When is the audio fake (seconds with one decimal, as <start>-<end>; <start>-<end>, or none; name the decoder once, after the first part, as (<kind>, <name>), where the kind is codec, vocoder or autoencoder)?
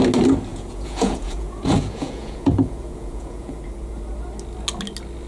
0.5-3.6 (vocoder, Vocos)